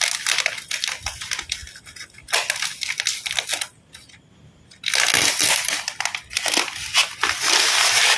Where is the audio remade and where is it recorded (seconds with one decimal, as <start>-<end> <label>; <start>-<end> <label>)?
0.0-8.2 recorded